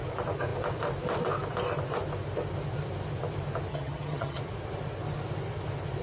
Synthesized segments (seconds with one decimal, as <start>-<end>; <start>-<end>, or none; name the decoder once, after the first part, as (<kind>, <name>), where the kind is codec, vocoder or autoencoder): 3.7-4.4 (vocoder, HiFi-GAN)

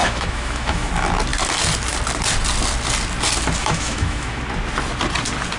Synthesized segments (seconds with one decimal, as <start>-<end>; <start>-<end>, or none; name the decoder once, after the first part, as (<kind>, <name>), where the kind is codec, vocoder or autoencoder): 0.0-0.9 (autoencoder, DAC-VAE); 3.6-4.4

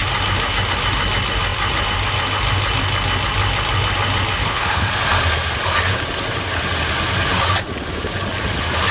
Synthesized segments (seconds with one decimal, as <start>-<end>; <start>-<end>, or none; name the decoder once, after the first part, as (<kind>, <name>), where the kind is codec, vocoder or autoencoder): 4.4-4.9 (codec, HILCodec)

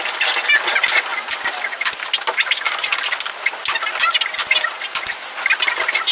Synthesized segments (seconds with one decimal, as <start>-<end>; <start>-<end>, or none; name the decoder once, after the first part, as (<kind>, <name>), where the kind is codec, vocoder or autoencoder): none

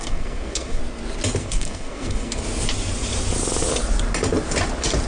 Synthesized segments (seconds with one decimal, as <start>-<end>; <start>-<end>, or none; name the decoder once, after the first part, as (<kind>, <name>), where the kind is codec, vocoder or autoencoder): 0.0-0.8 (codec, SNAC); 1.4-2.4

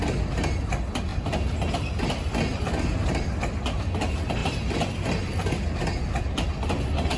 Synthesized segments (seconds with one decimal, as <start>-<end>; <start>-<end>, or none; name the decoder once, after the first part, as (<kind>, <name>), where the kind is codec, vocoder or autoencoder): none

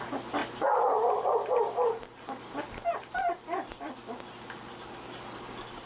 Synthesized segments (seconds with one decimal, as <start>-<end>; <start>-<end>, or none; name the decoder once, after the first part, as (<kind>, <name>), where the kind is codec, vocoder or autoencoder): 0.4-3.9 (vocoder, BigVGAN v2)

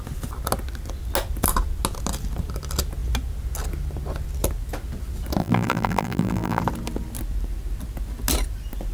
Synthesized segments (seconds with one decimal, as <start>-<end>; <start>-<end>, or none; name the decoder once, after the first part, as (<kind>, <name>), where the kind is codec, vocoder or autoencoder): 5.4-6.6 (vocoder, BigVGAN v2)